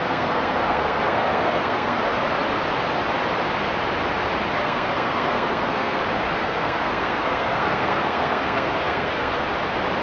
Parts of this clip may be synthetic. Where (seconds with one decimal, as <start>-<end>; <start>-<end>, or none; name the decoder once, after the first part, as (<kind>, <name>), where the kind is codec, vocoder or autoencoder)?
0.0-2.0 (codec, SNAC); 4.6-6.0; 6.4-9.4